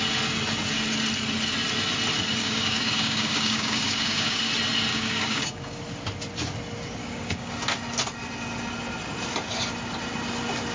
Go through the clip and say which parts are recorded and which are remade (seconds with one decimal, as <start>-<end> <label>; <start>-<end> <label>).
0.0-2.4 recorded; 2.4-4.5 remade; 4.5-4.9 recorded; 4.9-5.8 remade; 5.8-7.0 recorded; 7.0-7.5 remade; 7.5-10.7 recorded

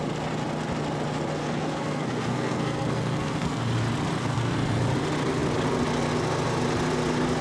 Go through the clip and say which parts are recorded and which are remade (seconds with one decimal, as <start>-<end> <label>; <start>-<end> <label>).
0.0-1.4 recorded; 1.4-3.6 remade; 3.6-4.2 recorded; 4.2-4.8 remade; 4.8-7.4 recorded

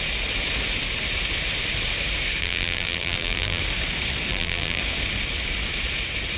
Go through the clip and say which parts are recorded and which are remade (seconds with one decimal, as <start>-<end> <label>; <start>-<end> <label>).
0.0-2.4 recorded; 2.4-3.6 remade; 3.6-4.3 recorded; 4.3-4.8 remade; 4.8-6.4 recorded

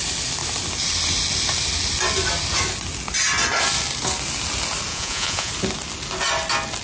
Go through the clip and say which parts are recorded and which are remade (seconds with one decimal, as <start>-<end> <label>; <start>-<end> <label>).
0.0-4.9 recorded; 4.9-5.5 remade; 5.5-6.8 recorded

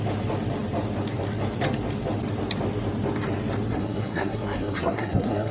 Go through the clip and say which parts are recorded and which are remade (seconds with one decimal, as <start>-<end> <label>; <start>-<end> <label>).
0.0-3.7 recorded; 3.7-5.5 remade

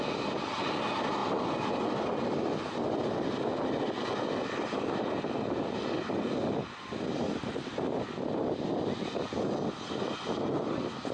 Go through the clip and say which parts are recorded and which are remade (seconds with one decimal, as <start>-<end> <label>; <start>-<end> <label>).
0.0-11.1 recorded